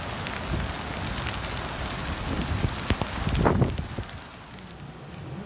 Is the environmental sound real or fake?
real